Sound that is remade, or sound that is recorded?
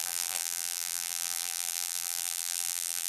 remade